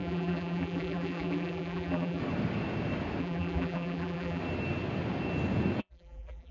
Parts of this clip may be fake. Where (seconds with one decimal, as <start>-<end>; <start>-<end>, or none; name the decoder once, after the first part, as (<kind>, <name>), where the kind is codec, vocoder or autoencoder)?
0.0-2.2 (vocoder, BigVGAN v2); 3.2-4.4; 5.8-6.5